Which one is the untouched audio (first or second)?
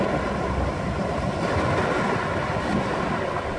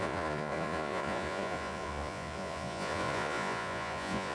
first